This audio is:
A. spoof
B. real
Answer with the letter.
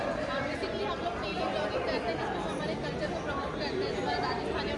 B